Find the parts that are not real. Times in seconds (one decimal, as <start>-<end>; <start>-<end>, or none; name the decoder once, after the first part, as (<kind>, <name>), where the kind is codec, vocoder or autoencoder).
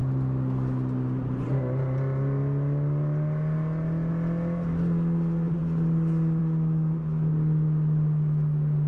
none